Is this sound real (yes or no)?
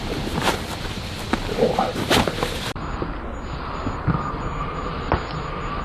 yes